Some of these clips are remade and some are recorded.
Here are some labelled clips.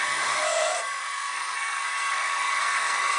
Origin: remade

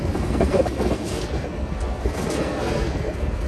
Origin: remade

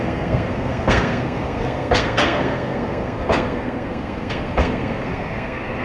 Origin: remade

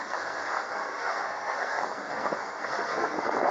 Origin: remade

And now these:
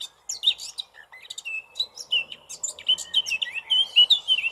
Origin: recorded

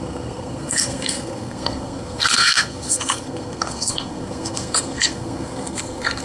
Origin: remade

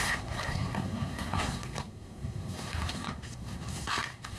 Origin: remade